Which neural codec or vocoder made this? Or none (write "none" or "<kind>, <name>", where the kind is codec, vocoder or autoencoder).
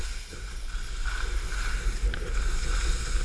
none